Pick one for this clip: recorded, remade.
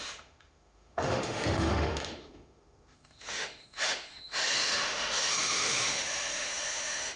remade